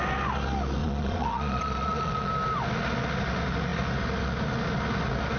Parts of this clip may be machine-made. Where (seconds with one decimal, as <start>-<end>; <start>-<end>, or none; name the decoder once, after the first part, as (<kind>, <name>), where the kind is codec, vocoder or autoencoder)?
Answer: 0.8-2.3 (vocoder, Vocos)